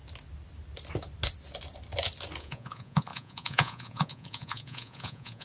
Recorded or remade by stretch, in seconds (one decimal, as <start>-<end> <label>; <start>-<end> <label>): 0.0-2.4 recorded; 2.4-5.4 remade